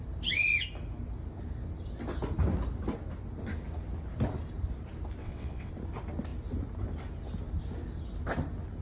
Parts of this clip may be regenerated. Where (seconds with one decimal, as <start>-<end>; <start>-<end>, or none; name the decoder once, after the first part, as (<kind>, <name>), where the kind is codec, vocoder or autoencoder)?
5.2-5.7 (vocoder, WaveNeXt)